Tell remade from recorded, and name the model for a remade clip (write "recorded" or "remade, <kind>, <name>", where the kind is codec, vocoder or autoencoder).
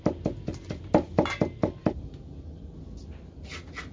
recorded